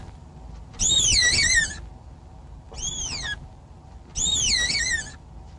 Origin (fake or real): fake